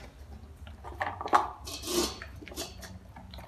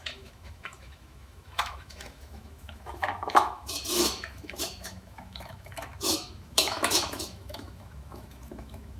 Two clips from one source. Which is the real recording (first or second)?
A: first